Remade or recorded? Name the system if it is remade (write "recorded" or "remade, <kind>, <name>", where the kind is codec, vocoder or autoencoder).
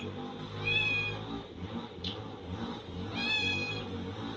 recorded